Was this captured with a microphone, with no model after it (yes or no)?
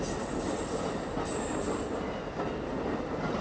yes